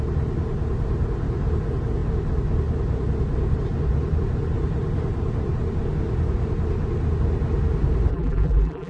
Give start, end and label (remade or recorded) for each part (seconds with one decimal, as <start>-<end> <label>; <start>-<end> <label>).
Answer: 0.0-8.1 recorded; 8.1-8.9 remade